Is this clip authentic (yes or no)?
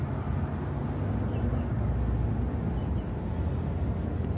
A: yes